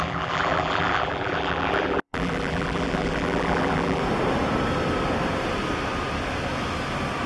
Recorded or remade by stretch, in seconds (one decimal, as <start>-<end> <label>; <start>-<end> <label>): 0.0-4.0 remade; 4.0-7.3 recorded